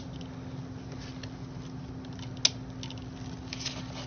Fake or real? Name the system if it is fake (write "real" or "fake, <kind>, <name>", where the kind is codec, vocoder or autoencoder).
real